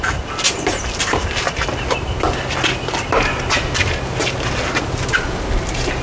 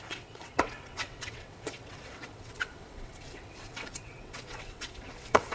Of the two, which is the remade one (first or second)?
second